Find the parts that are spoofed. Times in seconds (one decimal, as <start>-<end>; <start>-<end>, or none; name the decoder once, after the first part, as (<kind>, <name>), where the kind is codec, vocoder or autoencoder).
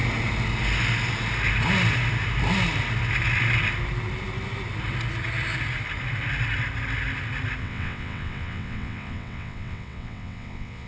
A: 7.6-10.9 (vocoder, WaveNeXt)